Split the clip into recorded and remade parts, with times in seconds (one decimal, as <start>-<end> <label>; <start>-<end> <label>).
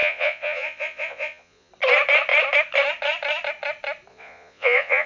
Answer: 0.0-1.7 remade; 1.7-4.1 recorded; 4.1-5.1 remade